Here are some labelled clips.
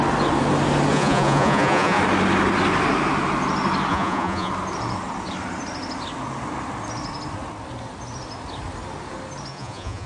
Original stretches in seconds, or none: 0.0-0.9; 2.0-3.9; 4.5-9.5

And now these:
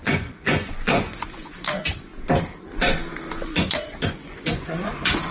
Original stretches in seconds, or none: 2.1-3.1

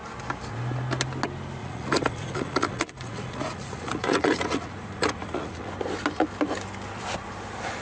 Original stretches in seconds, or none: 0.0-1.6; 5.7-7.8